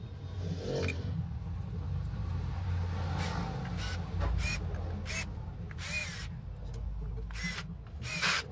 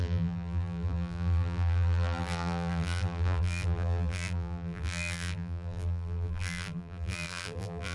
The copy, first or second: second